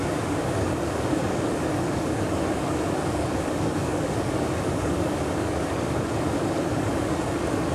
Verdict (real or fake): fake